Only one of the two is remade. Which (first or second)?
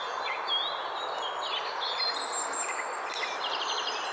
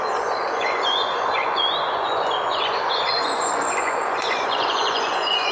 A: second